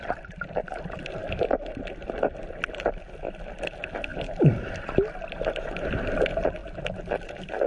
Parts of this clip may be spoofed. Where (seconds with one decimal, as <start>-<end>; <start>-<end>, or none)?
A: none